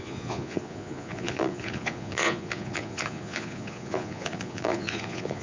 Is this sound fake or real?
fake